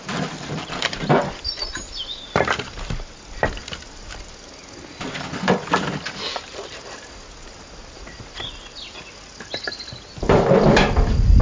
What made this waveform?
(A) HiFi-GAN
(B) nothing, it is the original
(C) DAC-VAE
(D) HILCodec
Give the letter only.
B